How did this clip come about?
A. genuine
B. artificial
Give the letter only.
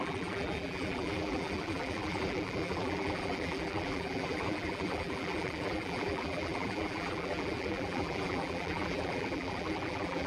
B